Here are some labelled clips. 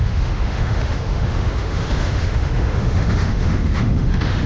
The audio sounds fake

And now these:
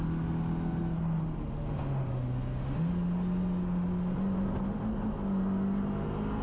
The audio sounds real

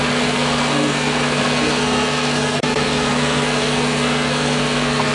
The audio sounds fake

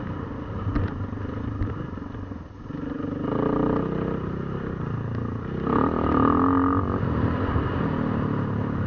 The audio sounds real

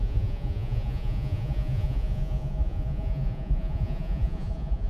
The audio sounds fake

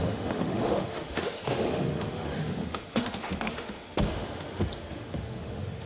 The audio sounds fake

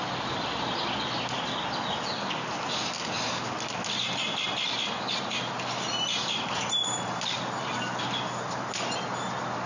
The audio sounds real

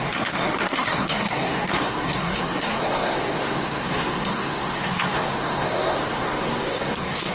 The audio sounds fake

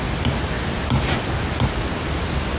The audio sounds real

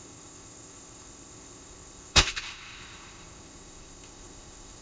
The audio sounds fake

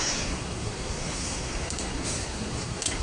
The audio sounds fake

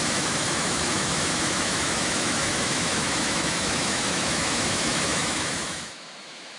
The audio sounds fake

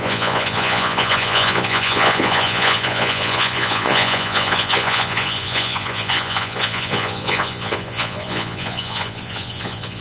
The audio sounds fake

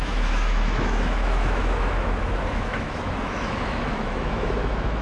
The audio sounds fake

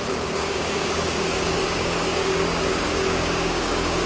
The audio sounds fake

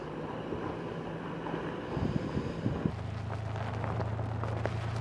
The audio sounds real